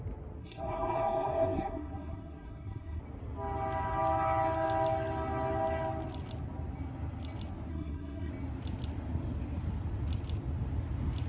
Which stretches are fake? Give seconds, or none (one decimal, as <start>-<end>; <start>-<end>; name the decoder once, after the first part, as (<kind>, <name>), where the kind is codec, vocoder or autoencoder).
0.4-3.0 (codec, SNAC); 7.7-8.3